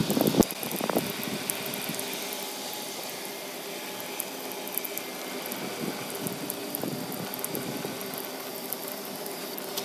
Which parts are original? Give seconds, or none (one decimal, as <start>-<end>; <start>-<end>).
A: 0.0-6.6; 7.1-8.5; 9.4-9.8